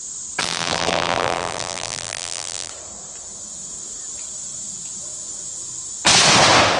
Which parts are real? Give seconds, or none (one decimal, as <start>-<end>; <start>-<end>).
0.0-0.4; 2.7-6.8